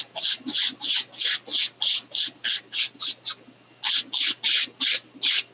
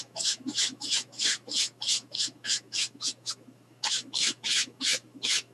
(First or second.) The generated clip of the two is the second